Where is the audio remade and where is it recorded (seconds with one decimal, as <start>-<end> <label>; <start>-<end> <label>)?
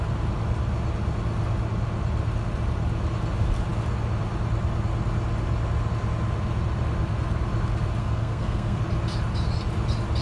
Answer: 0.0-8.0 recorded; 8.0-8.8 remade; 8.8-10.2 recorded